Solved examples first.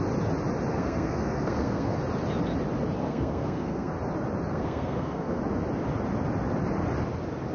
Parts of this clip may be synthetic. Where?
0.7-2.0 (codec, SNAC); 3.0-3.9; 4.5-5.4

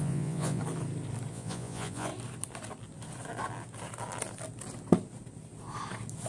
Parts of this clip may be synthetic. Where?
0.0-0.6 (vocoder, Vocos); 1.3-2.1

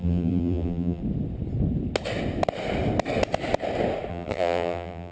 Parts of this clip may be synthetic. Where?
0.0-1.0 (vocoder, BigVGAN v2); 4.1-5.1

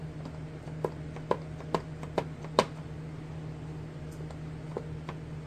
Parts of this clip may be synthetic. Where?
none